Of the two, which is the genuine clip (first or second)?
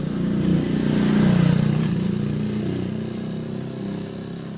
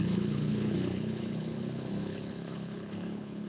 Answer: first